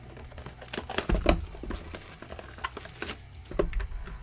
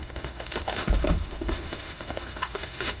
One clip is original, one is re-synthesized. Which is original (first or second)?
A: first